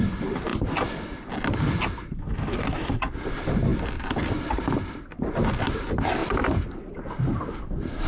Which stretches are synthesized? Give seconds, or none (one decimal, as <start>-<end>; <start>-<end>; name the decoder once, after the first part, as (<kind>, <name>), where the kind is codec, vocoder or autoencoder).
2.2-3.0 (codec, DAC)